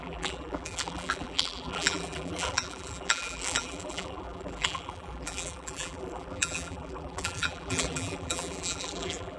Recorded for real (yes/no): no